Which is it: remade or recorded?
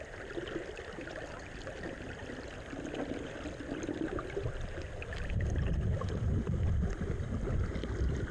recorded